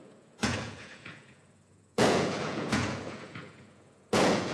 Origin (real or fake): fake